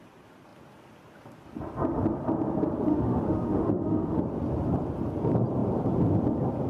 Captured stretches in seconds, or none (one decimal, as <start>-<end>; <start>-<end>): 0.0-2.9; 4.2-6.7